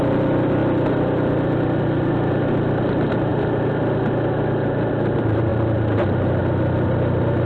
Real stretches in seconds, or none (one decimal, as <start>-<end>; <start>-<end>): 0.0-7.5